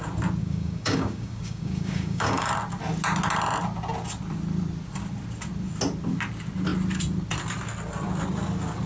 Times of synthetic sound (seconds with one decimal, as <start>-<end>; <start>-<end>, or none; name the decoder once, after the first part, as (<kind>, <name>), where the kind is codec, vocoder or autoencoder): 0.4-2.5 (codec, DAC)